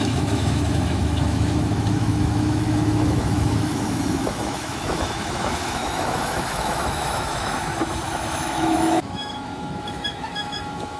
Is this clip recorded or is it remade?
remade